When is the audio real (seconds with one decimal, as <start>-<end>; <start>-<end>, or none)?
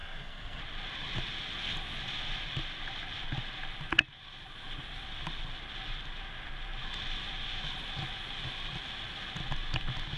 0.6-10.2